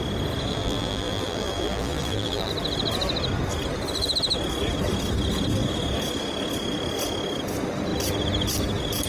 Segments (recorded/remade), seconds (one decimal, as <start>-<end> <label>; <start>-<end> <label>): 0.0-0.5 recorded; 0.5-2.5 remade; 2.5-9.1 recorded